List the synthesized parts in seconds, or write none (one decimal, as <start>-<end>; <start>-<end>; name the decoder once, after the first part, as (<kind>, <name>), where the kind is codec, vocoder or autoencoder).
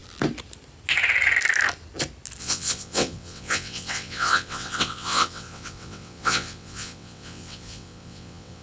2.4-8.6 (vocoder, WaveNeXt)